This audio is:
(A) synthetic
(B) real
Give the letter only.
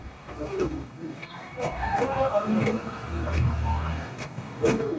A